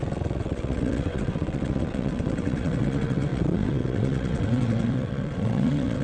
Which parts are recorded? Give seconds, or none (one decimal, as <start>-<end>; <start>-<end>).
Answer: none